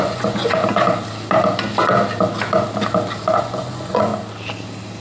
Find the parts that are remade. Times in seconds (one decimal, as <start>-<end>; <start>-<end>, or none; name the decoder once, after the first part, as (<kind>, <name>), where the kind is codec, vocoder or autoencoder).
0.0-0.6 (vocoder, Vocos); 3.4-4.1